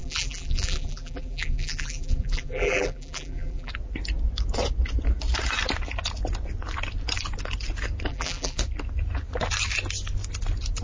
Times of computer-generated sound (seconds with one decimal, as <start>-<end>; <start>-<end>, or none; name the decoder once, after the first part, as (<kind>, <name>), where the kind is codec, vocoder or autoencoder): 0.0-3.7 (vocoder, BigVGAN v2); 8.1-8.6